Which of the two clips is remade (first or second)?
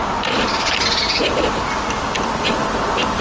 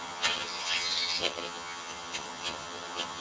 second